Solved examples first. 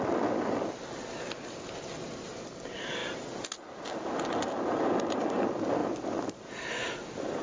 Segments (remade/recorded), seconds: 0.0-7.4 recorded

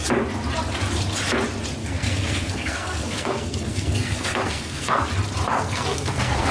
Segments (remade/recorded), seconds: 0.0-1.8 recorded; 1.8-5.1 remade; 5.1-5.5 recorded; 5.5-6.5 remade

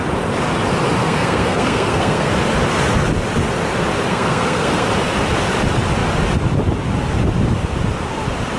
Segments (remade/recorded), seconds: 0.0-1.0 recorded; 1.0-2.3 remade; 2.3-4.1 recorded; 4.1-4.9 remade; 4.9-8.6 recorded

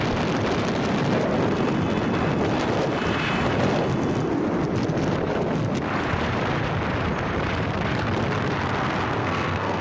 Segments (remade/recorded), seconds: 0.0-9.2 recorded; 9.2-9.8 remade